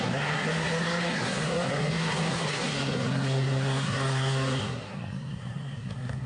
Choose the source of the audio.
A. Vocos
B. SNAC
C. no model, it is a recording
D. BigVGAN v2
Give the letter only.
B